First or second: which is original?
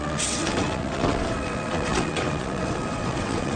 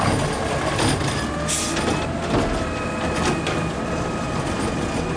second